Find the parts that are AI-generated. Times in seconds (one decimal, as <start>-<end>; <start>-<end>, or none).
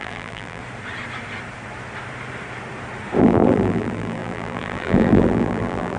0.0-0.6; 3.2-6.0